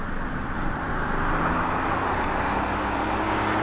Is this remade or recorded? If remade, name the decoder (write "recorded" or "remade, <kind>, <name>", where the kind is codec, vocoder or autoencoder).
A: recorded